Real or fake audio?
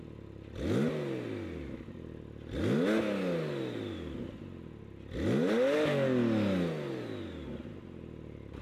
real